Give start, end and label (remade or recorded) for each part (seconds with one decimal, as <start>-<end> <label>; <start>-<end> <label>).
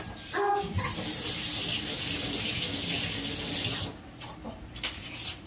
0.0-5.5 recorded